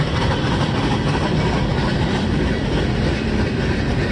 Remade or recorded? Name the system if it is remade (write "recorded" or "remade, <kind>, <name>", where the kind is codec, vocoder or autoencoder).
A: recorded